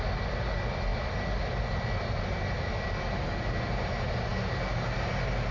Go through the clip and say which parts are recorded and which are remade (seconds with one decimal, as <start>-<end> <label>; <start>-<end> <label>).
0.0-5.5 recorded